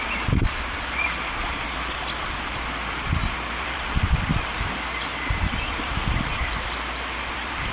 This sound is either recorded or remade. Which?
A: remade